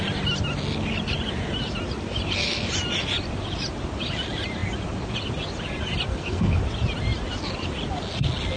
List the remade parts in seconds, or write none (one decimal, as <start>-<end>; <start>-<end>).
6.1-6.6